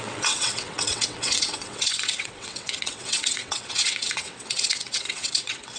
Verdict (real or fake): fake